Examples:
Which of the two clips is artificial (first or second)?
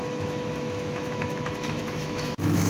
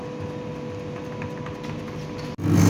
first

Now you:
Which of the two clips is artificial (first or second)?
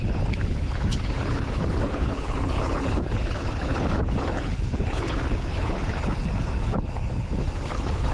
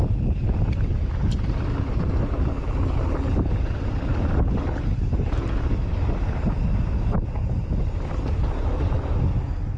first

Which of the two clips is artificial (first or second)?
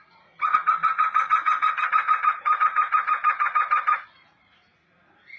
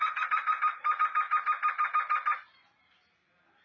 first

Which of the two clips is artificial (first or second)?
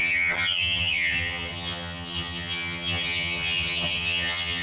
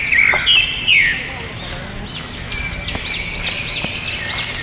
first